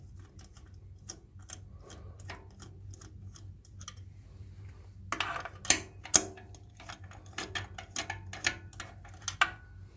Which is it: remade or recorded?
recorded